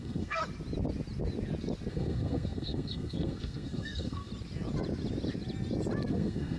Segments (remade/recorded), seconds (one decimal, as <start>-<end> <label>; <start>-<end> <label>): 0.0-0.4 remade; 0.4-1.9 recorded; 1.9-4.3 remade; 4.3-6.1 recorded; 6.1-6.6 remade